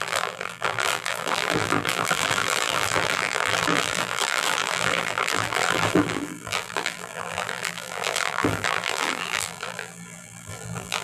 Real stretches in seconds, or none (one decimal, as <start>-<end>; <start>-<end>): none